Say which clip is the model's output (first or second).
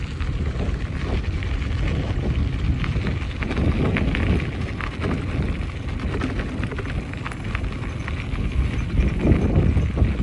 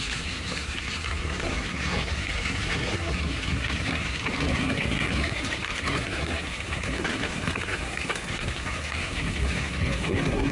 second